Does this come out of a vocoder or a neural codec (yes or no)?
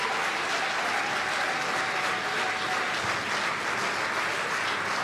no